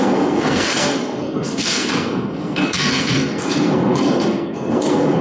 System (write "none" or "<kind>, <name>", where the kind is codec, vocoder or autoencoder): codec, SNAC